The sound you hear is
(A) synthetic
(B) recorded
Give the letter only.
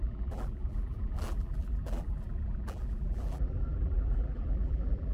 A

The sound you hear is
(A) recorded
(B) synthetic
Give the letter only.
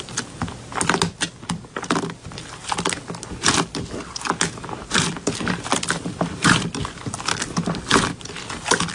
A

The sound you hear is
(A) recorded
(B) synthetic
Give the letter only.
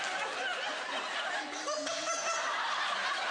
A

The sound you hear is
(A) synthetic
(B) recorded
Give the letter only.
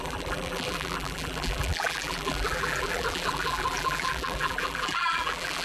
A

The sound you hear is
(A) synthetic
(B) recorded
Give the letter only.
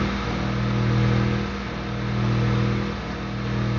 B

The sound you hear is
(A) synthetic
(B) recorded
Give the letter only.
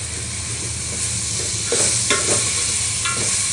B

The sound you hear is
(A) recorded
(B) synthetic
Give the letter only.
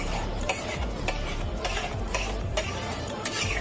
B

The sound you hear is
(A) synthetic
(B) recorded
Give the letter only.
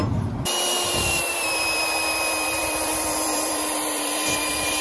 A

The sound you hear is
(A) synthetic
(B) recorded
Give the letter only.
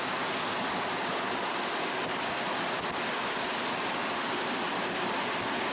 B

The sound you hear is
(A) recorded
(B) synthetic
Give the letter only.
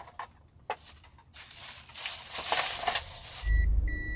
A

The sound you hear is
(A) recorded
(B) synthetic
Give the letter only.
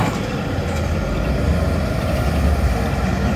A